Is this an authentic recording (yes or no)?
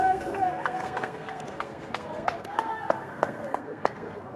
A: no